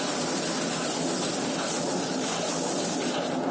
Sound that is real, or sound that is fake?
real